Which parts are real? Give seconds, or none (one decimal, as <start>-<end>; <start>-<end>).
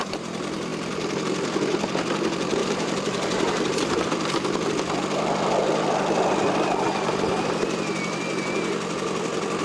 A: 0.0-2.6; 4.0-9.6